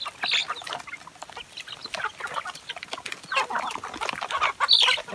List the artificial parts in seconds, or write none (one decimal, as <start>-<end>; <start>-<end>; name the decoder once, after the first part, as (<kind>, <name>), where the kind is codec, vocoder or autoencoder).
none